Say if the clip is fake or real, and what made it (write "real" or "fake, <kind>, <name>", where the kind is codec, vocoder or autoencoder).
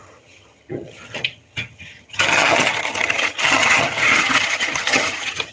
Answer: fake, vocoder, HiFi-GAN